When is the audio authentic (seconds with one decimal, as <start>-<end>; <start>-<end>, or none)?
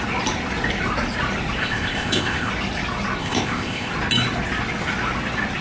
0.0-1.6; 2.5-3.2; 3.9-5.6